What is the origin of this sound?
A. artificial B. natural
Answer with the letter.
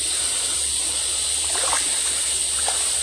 B